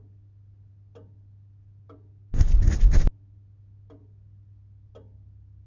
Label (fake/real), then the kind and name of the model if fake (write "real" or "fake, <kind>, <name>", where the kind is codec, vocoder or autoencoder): real